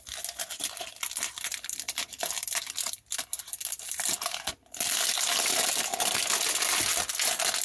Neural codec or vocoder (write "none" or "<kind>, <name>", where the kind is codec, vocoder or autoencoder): none